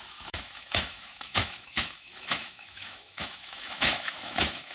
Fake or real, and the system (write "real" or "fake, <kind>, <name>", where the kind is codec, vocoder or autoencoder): fake, autoencoder, DAC-VAE